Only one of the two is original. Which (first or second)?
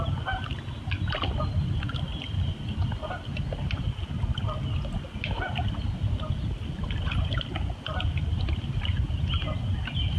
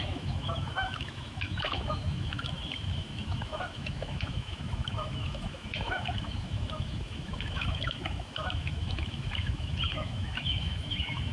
first